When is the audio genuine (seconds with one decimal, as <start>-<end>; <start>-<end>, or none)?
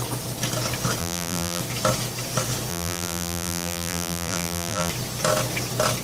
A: 0.0-1.0; 1.6-2.7; 4.9-6.0